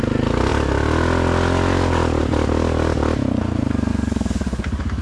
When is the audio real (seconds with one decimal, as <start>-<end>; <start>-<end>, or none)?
0.0-3.9